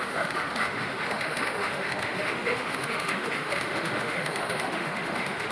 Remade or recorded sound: remade